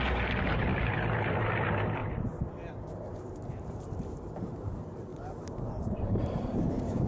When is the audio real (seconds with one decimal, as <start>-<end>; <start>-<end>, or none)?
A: 2.0-2.7

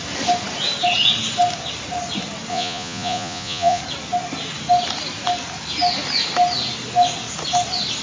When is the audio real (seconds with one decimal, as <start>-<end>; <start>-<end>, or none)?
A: 0.0-2.5; 3.8-8.0

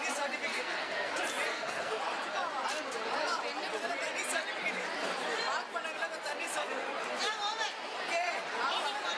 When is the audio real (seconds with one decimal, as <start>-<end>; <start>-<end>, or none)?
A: 0.0-0.5; 1.1-1.5; 2.0-9.2

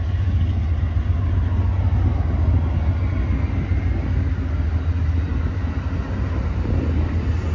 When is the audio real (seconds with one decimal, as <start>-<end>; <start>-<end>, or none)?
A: 0.0-7.5

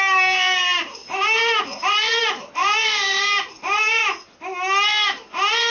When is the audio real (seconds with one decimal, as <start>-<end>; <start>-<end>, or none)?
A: 1.0-1.6; 4.0-5.7

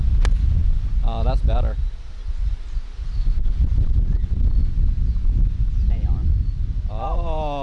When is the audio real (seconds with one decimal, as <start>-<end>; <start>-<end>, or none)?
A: 0.0-7.6

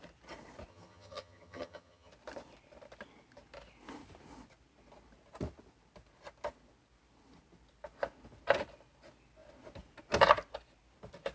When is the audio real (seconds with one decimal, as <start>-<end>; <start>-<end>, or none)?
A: 0.0-0.7; 2.1-11.3